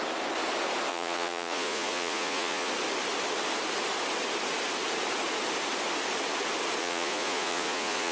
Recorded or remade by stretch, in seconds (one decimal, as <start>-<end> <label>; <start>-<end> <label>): 0.0-0.9 recorded; 0.9-2.7 remade; 2.7-6.8 recorded; 6.8-8.1 remade